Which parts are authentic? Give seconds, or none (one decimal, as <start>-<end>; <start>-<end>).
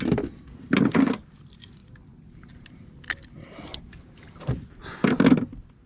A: 0.0-5.9